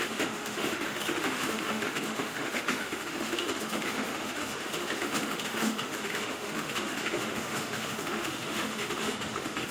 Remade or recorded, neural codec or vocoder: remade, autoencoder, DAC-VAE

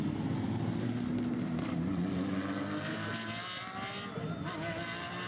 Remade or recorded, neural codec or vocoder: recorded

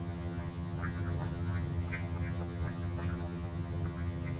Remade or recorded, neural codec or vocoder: remade, vocoder, HiFi-GAN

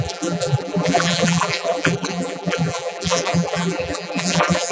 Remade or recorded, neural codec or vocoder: remade, vocoder, BigVGAN v2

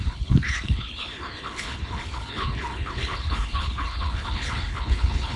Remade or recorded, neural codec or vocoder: remade, codec, HILCodec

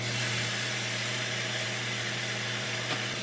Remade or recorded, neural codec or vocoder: remade, vocoder, BigVGAN v2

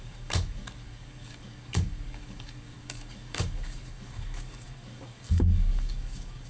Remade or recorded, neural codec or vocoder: remade, codec, DAC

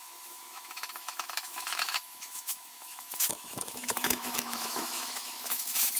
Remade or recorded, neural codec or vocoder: remade, autoencoder, DAC-VAE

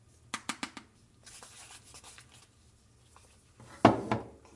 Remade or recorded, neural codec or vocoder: recorded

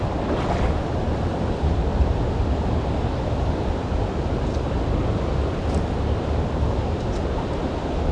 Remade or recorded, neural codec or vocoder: recorded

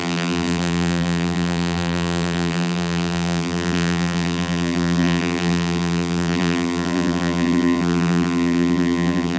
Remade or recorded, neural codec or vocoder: remade, vocoder, BigVGAN v2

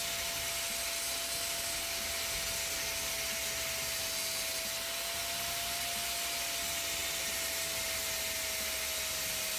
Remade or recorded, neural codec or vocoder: recorded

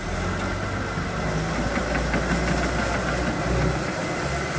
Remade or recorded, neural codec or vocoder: recorded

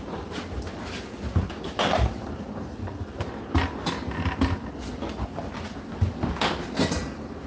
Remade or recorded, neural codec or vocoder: recorded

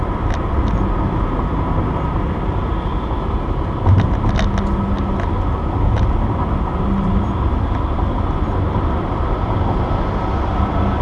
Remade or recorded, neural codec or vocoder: recorded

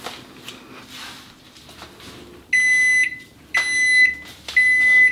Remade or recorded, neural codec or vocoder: recorded